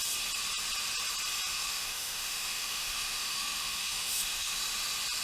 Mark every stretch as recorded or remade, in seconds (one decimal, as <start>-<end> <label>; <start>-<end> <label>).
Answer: 0.0-1.5 recorded; 1.5-4.6 remade; 4.6-5.2 recorded